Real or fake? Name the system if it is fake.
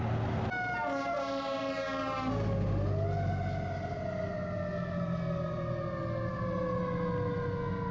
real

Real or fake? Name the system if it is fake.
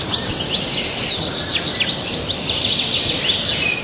real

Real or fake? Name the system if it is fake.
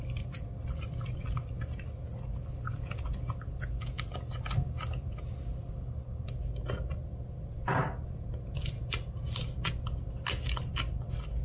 real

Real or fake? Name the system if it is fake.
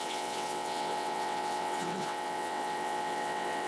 fake, vocoder, WaveNeXt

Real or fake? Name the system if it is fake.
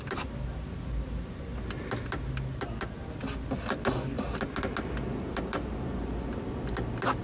real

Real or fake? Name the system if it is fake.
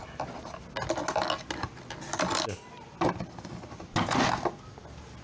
real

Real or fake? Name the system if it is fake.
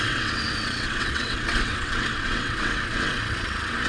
fake, vocoder, WaveNeXt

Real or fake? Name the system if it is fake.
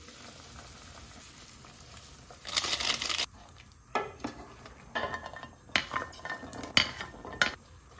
real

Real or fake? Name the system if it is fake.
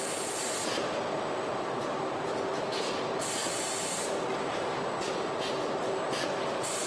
real